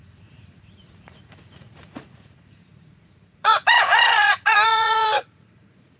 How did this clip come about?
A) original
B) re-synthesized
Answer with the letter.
B